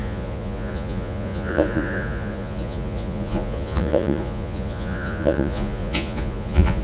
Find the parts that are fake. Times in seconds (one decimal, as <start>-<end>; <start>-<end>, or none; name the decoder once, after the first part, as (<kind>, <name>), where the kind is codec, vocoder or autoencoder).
0.0-6.8 (vocoder, Vocos)